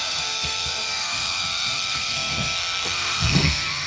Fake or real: fake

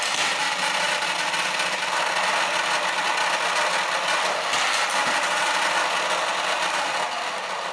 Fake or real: real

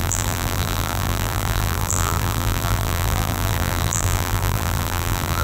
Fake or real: fake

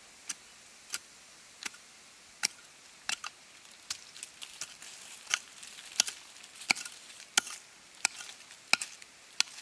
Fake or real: real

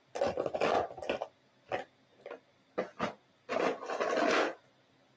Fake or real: real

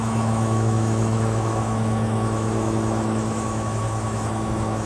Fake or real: fake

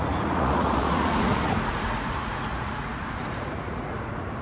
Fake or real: fake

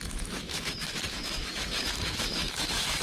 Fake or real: fake